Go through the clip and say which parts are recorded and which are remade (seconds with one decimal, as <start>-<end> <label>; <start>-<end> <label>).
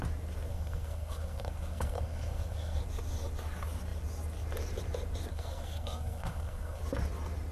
0.0-0.5 recorded; 0.5-2.8 remade; 2.8-5.3 recorded; 5.3-6.8 remade; 6.8-7.5 recorded